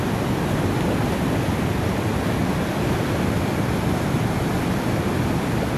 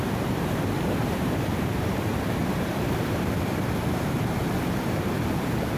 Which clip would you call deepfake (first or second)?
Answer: second